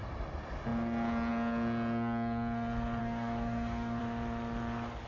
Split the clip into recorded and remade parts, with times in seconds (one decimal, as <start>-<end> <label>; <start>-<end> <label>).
0.0-3.0 recorded; 3.0-4.0 remade; 4.0-5.1 recorded